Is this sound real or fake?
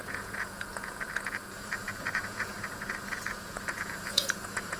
fake